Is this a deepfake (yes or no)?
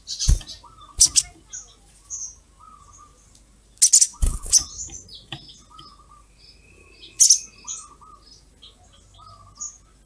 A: no